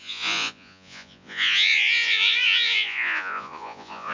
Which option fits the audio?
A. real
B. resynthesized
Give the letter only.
B